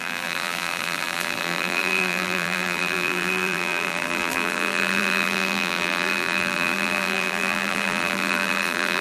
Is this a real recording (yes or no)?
no